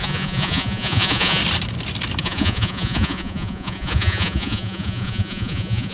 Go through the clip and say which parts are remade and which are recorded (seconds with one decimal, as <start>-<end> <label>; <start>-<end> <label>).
0.0-1.4 remade; 1.4-2.2 recorded; 2.2-5.9 remade